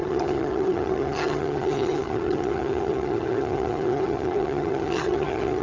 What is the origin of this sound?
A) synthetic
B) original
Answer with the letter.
A